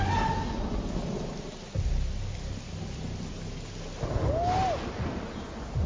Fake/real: real